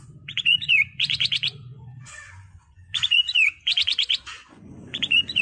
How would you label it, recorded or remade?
remade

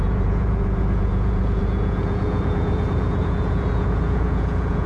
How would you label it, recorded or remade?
remade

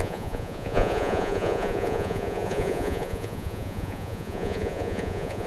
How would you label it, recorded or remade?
remade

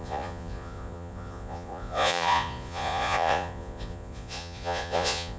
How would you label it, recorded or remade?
remade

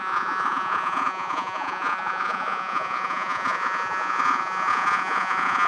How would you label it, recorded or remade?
remade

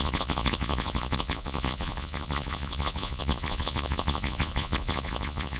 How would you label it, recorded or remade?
remade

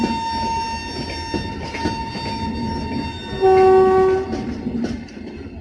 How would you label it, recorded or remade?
recorded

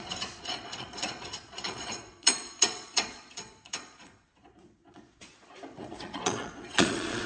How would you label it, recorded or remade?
remade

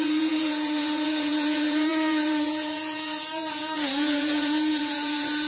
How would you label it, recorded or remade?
remade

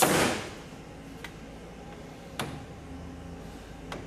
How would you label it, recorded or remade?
recorded